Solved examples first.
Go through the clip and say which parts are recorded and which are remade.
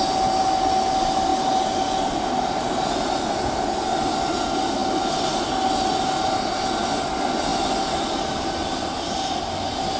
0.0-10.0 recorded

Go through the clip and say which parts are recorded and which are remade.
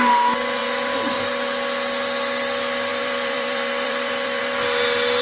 0.0-0.6 recorded; 0.6-1.3 remade; 1.3-2.9 recorded; 2.9-4.4 remade; 4.4-5.2 recorded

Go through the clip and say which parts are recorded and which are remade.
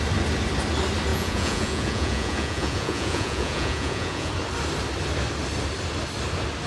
0.0-1.1 recorded; 1.1-4.3 remade; 4.3-6.7 recorded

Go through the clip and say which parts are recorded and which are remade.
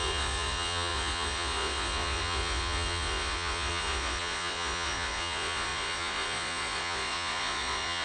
0.0-8.0 remade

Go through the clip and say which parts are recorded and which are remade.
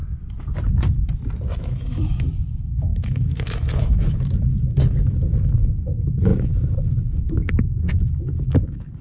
0.0-1.6 recorded; 1.6-9.0 remade